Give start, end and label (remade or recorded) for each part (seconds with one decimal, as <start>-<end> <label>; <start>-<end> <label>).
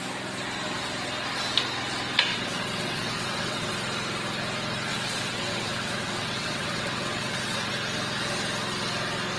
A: 0.0-2.3 recorded; 2.3-3.7 remade; 3.7-4.9 recorded; 4.9-7.7 remade; 7.7-9.4 recorded